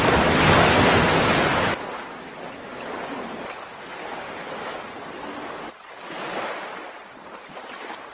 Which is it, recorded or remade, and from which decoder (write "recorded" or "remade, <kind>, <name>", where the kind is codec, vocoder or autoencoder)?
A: recorded